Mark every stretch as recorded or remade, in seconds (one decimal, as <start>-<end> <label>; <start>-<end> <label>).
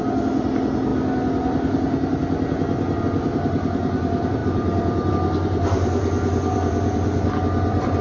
0.0-0.9 remade; 0.9-3.0 recorded; 3.0-8.0 remade